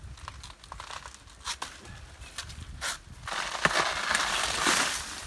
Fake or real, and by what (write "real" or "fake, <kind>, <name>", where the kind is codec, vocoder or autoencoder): real